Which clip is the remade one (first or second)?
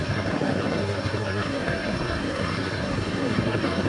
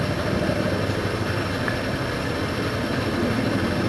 first